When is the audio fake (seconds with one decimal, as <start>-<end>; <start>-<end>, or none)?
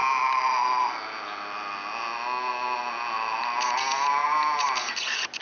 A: none